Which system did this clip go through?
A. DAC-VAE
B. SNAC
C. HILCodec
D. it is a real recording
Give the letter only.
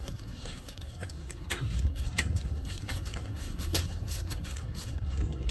B